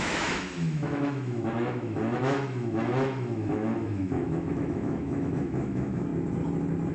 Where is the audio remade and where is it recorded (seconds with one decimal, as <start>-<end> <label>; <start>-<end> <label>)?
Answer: 0.0-6.1 remade; 6.1-6.9 recorded